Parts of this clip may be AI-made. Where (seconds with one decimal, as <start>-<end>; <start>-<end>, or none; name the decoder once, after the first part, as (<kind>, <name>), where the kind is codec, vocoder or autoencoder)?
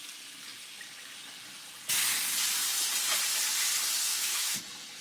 4.1-4.6 (autoencoder, DAC-VAE)